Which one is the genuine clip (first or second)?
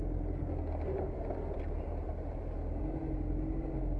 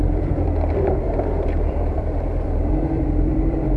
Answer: first